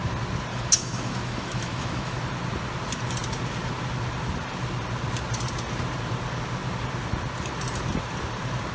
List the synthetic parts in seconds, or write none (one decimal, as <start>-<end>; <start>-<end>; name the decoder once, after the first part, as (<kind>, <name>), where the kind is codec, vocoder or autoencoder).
0.5-2.2 (autoencoder, DAC-VAE)